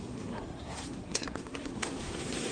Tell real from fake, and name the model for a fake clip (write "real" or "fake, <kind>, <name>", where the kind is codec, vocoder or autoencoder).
fake, codec, SNAC